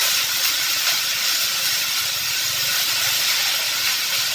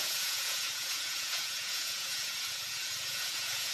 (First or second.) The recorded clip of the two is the first